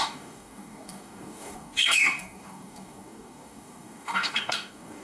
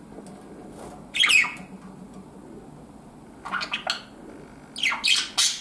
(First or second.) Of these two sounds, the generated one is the first